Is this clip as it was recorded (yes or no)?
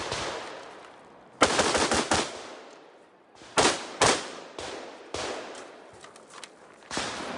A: yes